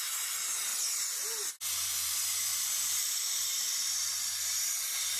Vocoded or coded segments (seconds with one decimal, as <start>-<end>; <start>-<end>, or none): 0.7-1.5; 2.5-4.1